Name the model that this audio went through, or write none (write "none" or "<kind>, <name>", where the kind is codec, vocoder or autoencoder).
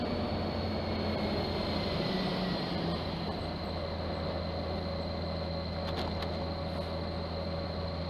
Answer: none